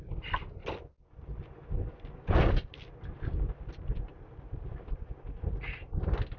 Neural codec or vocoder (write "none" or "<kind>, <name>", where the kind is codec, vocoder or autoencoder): none